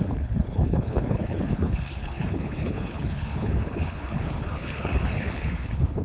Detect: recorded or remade remade